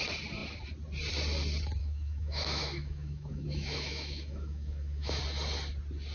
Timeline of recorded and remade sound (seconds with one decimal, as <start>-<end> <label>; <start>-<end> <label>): 0.0-1.8 recorded; 1.8-5.2 remade; 5.2-6.1 recorded